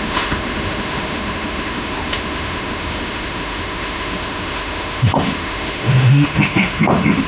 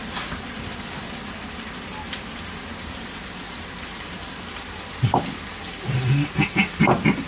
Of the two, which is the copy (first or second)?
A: first